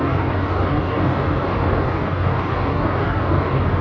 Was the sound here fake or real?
fake